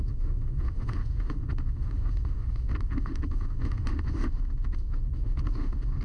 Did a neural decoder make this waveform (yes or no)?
yes